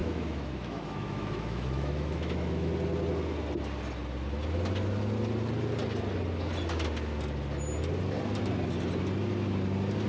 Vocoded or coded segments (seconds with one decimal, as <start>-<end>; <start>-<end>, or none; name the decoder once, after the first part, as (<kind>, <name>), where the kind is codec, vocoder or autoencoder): 0.0-2.7 (autoencoder, DAC-VAE)